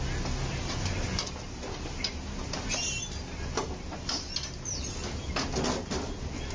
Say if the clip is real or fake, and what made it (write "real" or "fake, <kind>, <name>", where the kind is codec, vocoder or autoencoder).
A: real